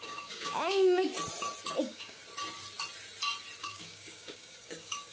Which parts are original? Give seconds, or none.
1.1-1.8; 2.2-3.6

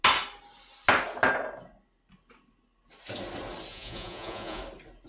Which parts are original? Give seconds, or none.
0.0-3.7; 4.6-5.1

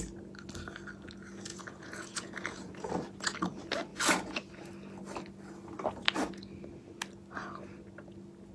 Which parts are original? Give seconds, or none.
0.0-1.5; 2.9-8.5

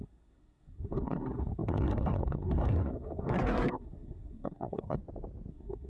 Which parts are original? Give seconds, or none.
5.0-5.5

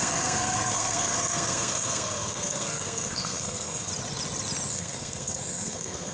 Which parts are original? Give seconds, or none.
3.9-4.7

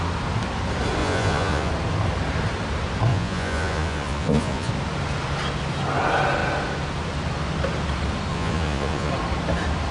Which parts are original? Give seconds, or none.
0.0-1.0; 1.7-3.1; 4.7-8.3; 9.1-9.9

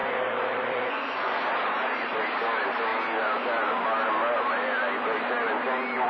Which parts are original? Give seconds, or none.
1.4-6.1